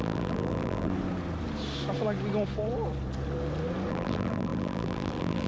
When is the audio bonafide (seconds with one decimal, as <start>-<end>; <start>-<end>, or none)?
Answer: 0.9-3.9